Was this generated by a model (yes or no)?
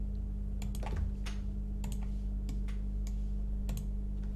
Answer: no